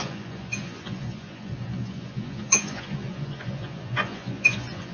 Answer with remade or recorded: remade